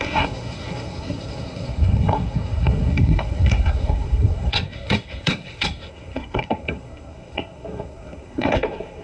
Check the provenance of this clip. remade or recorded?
remade